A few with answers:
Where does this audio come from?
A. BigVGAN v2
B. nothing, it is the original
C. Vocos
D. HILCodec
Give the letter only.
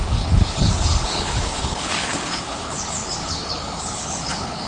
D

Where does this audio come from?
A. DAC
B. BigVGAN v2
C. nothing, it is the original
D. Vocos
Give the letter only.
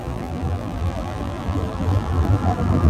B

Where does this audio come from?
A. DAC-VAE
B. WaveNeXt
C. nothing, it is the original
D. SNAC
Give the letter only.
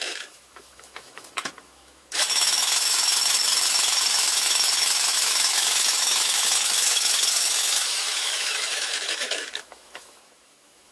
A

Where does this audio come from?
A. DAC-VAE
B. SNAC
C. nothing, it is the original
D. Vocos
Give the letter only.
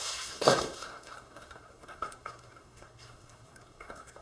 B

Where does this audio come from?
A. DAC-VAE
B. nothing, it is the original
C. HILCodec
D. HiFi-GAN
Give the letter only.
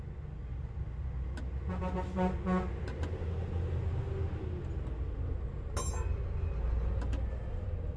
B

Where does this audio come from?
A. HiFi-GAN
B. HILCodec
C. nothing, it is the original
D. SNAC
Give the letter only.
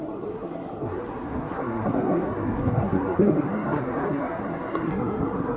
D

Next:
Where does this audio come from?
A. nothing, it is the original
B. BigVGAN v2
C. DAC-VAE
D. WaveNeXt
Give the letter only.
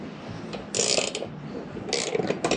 A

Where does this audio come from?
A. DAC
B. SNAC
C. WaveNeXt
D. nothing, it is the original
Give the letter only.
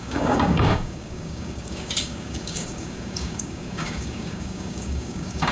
A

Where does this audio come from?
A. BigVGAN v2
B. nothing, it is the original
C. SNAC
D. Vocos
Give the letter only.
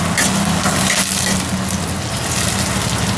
B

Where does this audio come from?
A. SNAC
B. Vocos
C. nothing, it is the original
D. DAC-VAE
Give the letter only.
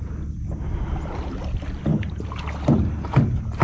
C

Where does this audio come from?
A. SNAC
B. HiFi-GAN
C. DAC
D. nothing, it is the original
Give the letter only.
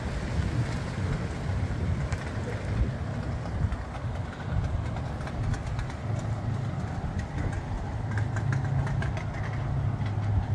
D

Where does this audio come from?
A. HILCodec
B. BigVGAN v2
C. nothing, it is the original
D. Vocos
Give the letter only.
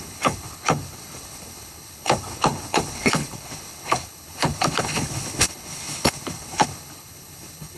A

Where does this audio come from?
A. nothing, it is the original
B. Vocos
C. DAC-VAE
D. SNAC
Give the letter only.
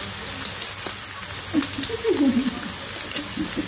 A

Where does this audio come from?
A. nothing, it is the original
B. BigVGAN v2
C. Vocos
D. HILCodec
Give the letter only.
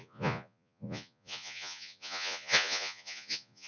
C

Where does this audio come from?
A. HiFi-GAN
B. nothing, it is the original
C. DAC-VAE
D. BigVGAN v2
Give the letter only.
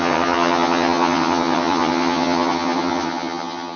A